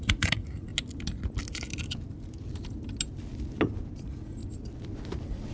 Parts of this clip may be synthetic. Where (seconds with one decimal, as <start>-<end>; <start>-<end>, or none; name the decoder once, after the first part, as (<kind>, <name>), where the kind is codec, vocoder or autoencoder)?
0.0-0.7 (vocoder, Vocos); 4.0-4.4